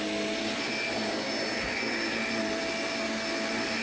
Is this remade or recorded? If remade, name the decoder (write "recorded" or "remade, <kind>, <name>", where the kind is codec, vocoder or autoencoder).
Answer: recorded